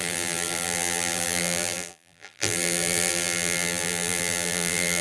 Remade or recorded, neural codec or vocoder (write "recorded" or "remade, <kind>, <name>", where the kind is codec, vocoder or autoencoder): remade, vocoder, BigVGAN v2